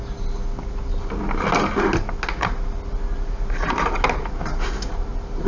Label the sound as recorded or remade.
recorded